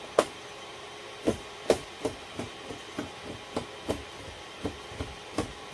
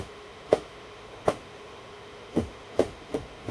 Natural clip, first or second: first